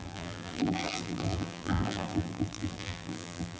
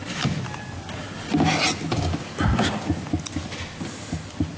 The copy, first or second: first